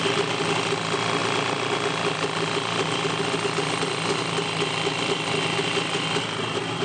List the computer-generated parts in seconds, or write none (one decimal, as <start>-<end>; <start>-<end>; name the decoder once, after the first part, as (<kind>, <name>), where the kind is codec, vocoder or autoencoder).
none